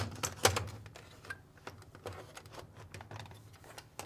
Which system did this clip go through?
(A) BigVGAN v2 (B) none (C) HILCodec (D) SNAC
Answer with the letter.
B